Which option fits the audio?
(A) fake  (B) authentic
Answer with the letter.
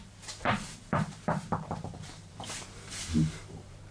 A